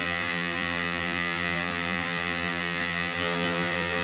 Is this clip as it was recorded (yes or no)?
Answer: no